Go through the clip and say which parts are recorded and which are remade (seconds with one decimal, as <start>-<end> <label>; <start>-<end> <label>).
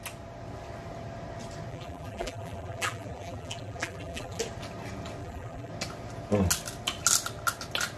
0.0-1.7 recorded; 1.7-4.4 remade; 4.4-5.2 recorded; 5.2-5.7 remade; 5.7-8.0 recorded